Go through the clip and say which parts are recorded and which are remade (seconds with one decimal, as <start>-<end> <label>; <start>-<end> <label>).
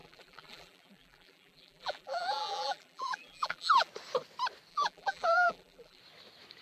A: 0.0-3.9 remade; 3.9-4.7 recorded; 4.7-6.0 remade; 6.0-6.6 recorded